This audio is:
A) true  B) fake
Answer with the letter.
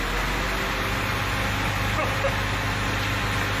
A